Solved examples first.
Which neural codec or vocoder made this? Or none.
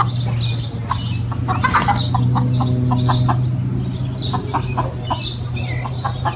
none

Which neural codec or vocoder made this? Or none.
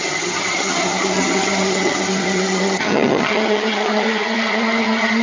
vocoder, HiFi-GAN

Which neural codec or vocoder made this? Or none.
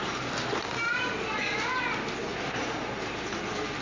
none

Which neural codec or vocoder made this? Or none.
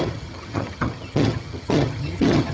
vocoder, HiFi-GAN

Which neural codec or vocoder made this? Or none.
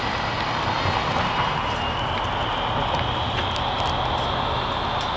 none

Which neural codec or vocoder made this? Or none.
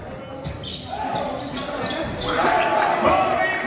none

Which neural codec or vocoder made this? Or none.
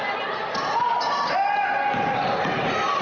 none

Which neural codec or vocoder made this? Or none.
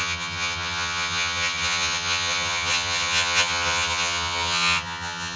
vocoder, HiFi-GAN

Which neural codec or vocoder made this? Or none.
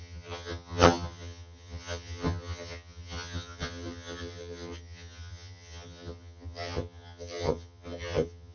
vocoder, HiFi-GAN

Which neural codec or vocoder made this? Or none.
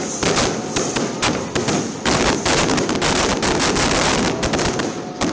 none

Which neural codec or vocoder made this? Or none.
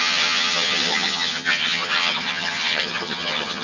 vocoder, HiFi-GAN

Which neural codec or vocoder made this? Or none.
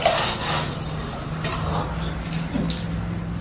none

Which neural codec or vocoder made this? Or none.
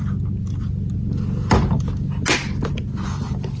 none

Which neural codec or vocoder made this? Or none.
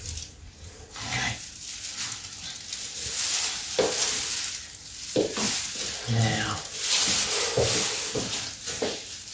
none